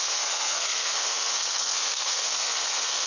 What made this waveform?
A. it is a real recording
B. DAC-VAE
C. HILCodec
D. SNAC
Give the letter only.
D